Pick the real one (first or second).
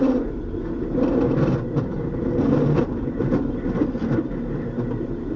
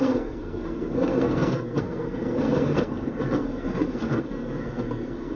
first